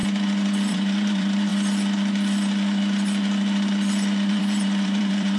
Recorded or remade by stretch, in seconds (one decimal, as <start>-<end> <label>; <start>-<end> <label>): 0.0-0.7 recorded; 0.7-1.5 remade; 1.5-4.3 recorded; 4.3-5.4 remade